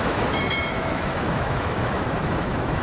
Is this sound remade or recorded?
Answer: remade